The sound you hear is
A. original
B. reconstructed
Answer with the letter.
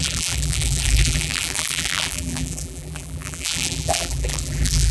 B